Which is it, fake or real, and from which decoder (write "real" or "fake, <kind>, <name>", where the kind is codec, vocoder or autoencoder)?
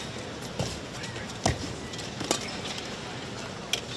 real